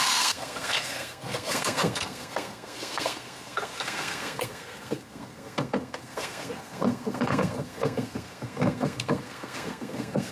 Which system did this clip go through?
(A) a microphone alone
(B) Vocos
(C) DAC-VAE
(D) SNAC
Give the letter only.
D